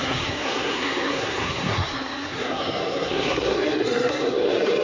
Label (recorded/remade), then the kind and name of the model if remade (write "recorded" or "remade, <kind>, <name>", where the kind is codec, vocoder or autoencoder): remade, codec, SNAC